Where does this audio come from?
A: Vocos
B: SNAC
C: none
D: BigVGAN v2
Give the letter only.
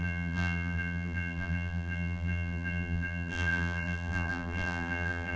D